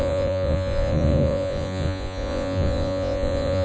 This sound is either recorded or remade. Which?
remade